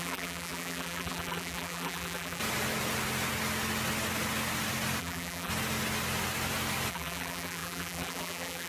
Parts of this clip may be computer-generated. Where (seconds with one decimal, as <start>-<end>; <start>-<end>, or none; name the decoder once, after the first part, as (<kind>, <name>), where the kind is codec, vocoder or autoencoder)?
0.0-2.4 (vocoder, BigVGAN v2); 5.0-5.5; 6.9-8.7